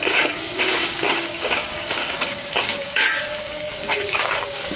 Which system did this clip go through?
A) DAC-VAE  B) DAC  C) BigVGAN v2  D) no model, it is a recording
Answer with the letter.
B